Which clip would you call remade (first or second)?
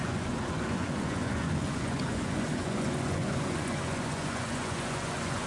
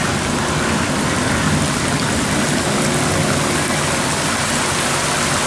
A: first